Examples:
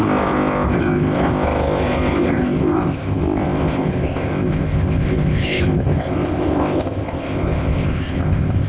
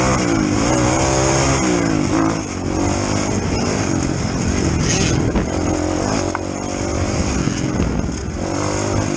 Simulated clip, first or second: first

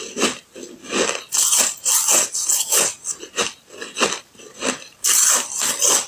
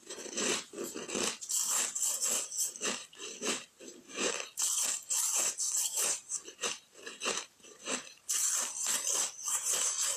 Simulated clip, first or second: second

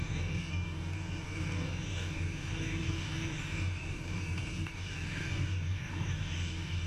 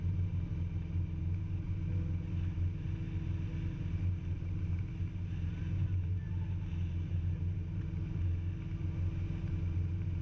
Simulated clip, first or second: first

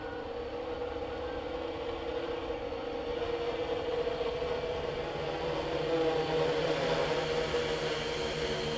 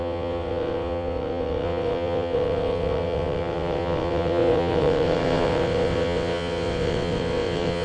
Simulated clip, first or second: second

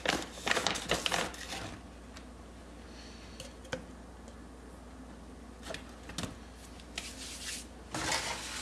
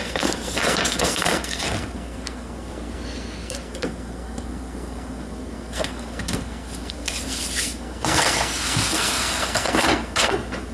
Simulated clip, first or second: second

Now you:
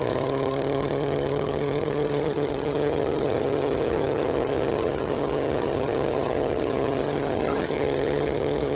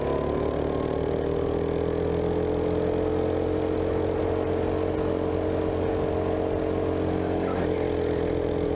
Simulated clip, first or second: first